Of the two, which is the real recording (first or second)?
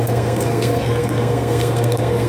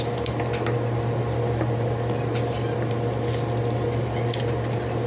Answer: second